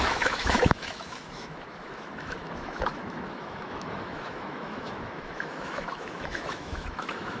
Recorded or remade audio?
remade